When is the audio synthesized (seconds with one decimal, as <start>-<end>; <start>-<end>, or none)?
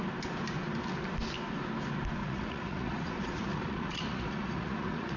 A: 2.2-5.2